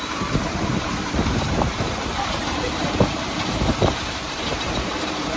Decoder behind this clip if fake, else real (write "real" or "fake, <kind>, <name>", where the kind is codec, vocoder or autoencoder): fake, vocoder, BigVGAN v2